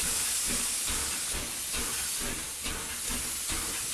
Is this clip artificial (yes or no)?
no